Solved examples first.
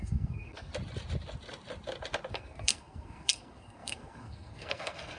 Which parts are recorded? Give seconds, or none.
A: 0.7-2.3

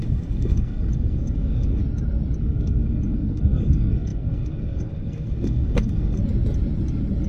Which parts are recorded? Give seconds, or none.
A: 1.8-2.4; 6.2-7.3

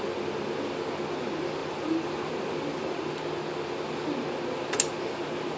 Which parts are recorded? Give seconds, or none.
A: 0.0-1.6; 3.0-5.6

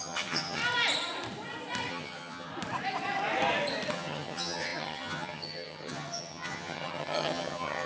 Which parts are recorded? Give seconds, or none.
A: 0.6-1.9; 2.5-3.9

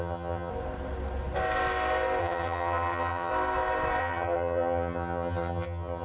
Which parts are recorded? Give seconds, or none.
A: 0.5-2.2; 3.3-4.0

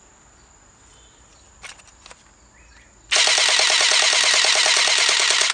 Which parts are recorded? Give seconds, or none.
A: 0.0-5.5

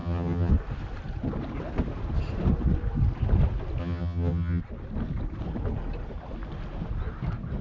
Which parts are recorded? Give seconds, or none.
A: 0.5-3.8; 4.6-7.6